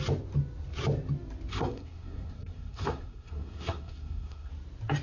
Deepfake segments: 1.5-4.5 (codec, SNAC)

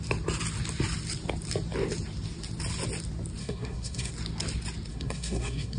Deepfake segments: 3.4-4.1 (codec, SNAC); 4.9-5.8

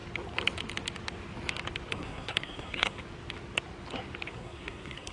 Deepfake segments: 1.9-3.0 (codec, SNAC); 4.3-5.1

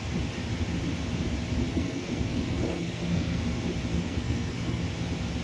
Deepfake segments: 1.7-3.4 (codec, SNAC); 3.9-4.8

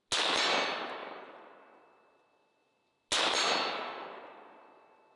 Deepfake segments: none